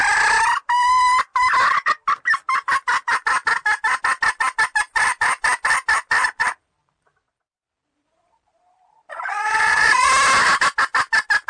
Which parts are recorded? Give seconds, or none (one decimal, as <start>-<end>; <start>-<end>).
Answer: 0.0-9.1; 10.1-11.5